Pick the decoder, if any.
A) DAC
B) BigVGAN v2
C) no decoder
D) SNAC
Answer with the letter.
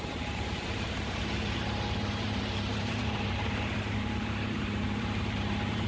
B